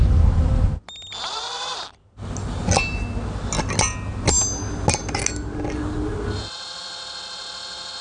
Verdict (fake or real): real